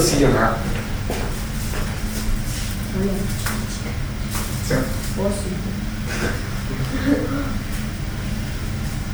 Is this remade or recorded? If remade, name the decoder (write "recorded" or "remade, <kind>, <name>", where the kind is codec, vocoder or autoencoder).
recorded